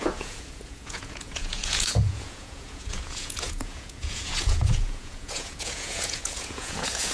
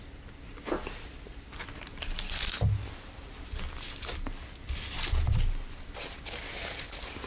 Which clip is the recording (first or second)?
second